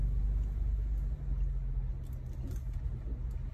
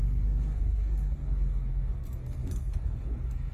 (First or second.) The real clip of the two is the first